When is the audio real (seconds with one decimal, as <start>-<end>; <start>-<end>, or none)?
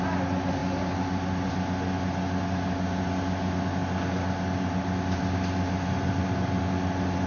0.0-7.3